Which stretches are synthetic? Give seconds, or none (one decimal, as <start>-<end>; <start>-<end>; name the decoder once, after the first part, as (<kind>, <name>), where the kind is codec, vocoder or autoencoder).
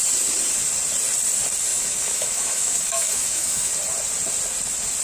1.7-3.7 (autoencoder, DAC-VAE)